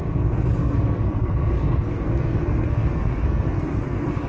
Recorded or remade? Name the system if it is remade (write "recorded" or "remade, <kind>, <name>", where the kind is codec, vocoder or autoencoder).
remade, codec, SNAC